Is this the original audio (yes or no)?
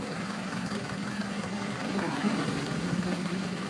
no